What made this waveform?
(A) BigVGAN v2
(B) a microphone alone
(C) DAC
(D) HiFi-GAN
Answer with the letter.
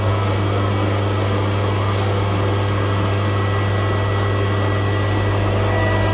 B